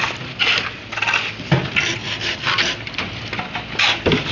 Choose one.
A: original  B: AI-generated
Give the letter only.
A